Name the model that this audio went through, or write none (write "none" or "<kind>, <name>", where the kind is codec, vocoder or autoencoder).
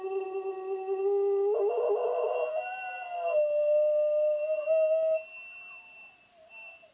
none